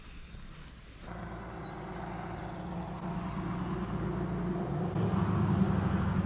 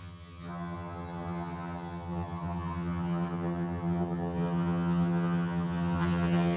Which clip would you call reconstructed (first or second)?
second